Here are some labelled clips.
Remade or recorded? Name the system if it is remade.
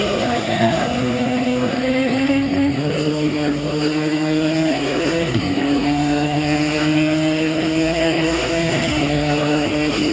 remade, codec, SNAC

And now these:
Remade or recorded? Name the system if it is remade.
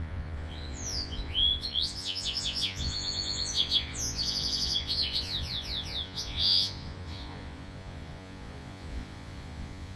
remade, vocoder, Vocos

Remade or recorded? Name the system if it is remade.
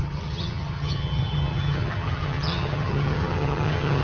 remade, vocoder, HiFi-GAN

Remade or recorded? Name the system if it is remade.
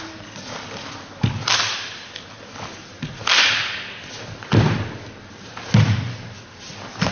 recorded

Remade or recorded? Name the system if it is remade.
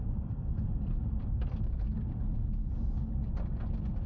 recorded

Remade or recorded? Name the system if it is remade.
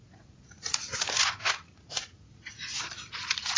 remade, vocoder, Vocos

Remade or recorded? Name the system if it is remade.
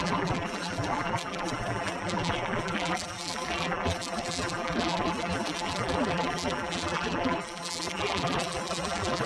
remade, vocoder, BigVGAN v2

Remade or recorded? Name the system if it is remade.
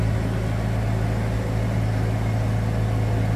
recorded